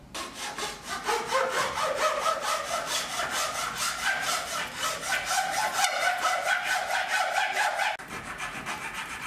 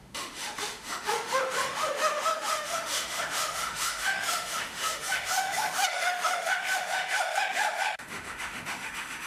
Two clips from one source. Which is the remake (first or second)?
second